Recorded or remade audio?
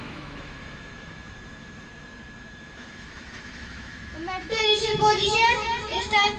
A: remade